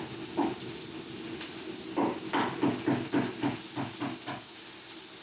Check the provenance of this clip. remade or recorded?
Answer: recorded